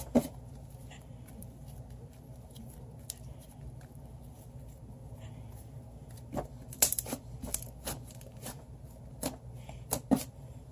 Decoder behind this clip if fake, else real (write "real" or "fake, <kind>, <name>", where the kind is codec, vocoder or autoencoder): real